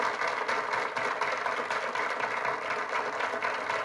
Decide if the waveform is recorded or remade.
recorded